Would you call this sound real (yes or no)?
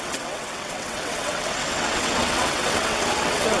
no